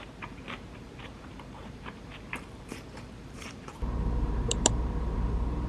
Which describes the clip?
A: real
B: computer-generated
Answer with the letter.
B